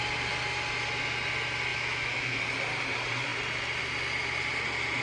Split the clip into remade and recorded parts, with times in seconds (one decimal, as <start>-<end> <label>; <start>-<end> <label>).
0.0-1.7 recorded; 1.7-2.4 remade; 2.4-5.0 recorded